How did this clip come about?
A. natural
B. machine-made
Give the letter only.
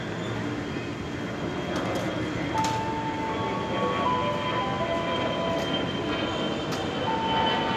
A